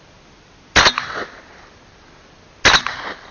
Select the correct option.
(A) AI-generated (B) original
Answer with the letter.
B